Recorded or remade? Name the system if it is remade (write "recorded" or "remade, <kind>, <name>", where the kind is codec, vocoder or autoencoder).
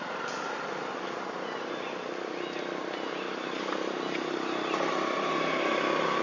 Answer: recorded